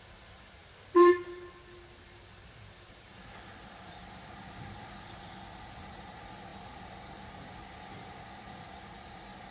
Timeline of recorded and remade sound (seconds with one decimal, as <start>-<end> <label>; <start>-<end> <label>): 0.0-0.6 remade; 0.6-3.1 recorded; 3.1-6.5 remade; 6.5-8.4 recorded; 8.4-9.5 remade